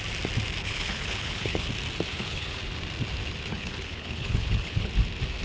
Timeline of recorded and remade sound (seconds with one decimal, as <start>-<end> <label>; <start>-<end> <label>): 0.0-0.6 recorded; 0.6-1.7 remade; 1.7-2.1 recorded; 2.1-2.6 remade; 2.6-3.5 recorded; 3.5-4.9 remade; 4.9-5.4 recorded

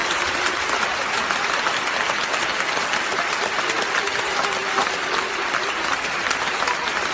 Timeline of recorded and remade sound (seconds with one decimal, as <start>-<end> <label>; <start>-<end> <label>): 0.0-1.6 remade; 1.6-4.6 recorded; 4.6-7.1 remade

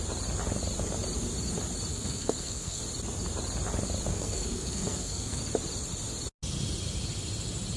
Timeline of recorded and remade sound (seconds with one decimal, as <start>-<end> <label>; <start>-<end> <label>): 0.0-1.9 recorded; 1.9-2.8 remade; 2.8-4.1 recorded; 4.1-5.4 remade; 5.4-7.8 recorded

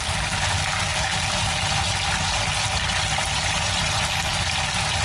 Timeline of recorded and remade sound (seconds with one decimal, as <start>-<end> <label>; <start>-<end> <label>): 0.0-5.0 recorded

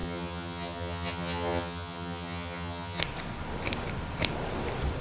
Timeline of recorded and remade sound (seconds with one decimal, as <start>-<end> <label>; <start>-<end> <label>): 0.0-3.0 remade; 3.0-5.0 recorded

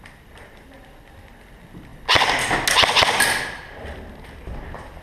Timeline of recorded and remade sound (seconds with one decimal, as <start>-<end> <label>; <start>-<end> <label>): 0.0-5.0 recorded